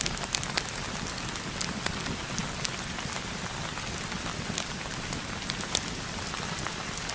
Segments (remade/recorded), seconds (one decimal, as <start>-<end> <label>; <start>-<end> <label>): 0.0-7.1 recorded